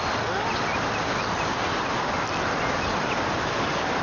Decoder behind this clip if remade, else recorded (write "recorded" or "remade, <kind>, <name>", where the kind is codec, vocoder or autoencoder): recorded